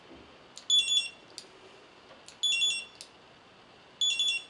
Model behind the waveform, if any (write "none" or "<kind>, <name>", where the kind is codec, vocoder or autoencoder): none